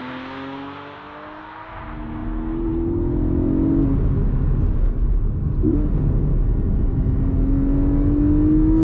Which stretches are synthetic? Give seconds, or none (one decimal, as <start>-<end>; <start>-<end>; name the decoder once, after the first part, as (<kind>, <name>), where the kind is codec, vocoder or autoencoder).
0.0-1.4 (codec, DAC)

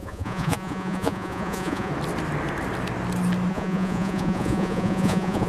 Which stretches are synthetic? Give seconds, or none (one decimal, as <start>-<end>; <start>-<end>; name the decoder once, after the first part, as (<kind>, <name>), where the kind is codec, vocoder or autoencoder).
0.0-1.9 (vocoder, Vocos); 3.5-5.5